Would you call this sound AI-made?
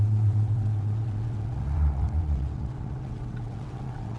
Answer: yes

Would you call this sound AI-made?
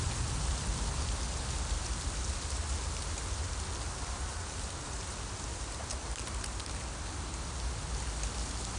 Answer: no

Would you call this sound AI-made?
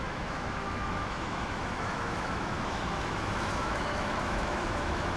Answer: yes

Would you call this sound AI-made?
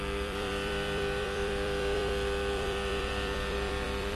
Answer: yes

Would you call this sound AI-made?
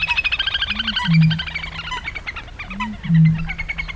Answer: no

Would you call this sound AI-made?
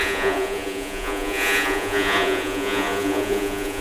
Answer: yes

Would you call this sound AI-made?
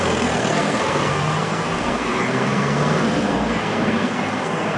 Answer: yes